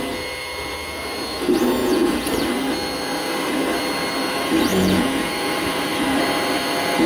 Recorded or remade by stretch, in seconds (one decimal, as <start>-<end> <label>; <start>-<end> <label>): 0.0-1.8 recorded; 1.8-2.3 remade; 2.3-4.7 recorded; 4.7-5.3 remade; 5.3-7.1 recorded